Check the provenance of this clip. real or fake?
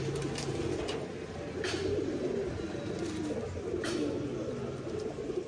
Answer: real